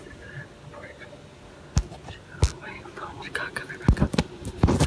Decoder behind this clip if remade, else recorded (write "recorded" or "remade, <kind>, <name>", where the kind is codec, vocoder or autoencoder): recorded